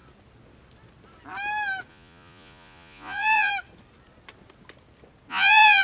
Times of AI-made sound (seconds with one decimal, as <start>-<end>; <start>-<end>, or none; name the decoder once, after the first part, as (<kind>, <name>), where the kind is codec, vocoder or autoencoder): 1.9-3.5 (vocoder, Vocos); 5.3-5.8